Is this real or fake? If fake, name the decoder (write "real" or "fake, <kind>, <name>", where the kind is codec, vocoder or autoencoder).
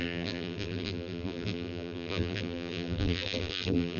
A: fake, vocoder, BigVGAN v2